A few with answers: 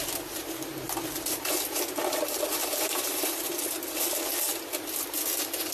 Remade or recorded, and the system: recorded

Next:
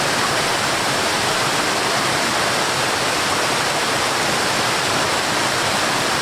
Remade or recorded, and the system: recorded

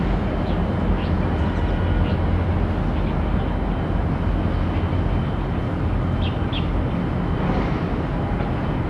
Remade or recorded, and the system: recorded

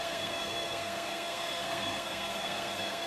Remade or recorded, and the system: remade, codec, SNAC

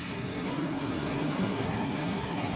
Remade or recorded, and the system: remade, codec, SNAC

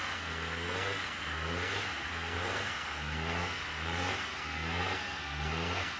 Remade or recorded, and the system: remade, codec, SNAC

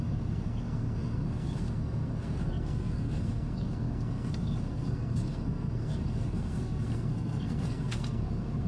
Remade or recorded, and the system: remade, codec, SNAC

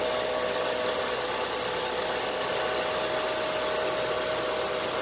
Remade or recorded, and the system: recorded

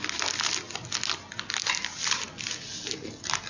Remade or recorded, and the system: recorded